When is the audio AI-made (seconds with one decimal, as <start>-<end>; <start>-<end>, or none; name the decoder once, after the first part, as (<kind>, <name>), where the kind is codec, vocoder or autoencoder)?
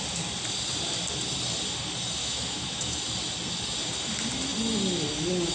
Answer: 2.2-3.0 (autoencoder, DAC-VAE)